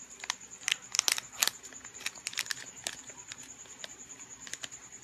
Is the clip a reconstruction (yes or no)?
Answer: no